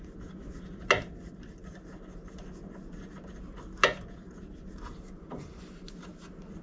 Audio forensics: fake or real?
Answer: real